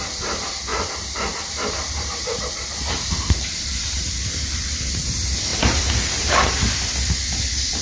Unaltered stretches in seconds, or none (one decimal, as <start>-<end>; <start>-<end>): 0.0-0.7; 5.1-5.5; 6.7-7.8